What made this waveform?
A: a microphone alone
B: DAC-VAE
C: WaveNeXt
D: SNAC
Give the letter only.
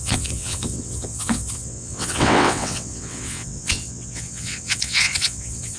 C